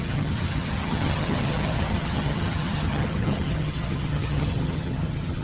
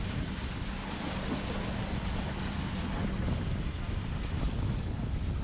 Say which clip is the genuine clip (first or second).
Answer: second